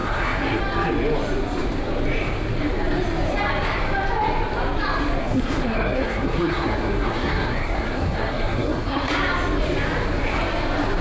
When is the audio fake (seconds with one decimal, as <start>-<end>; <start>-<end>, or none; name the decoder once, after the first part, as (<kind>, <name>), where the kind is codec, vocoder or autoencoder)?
0.0-0.6 (codec, SNAC); 5.2-9.1